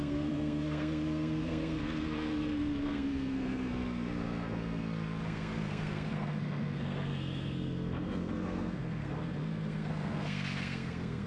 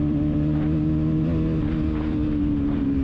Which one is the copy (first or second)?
first